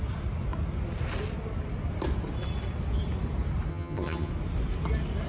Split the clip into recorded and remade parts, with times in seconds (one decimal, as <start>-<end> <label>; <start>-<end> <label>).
0.0-3.7 recorded; 3.7-4.3 remade; 4.3-5.3 recorded